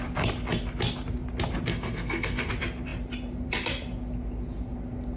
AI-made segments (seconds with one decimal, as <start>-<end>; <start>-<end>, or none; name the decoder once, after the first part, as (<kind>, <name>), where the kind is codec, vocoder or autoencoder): 1.7-2.5 (codec, SNAC)